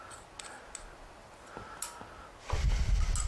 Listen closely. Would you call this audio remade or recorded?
recorded